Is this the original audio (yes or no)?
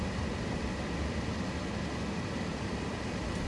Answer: yes